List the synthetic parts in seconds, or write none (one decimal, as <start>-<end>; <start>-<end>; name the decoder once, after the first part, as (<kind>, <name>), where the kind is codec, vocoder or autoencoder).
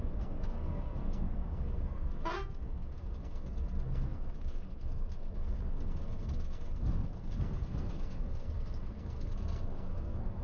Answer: 0.0-10.4 (codec, SNAC)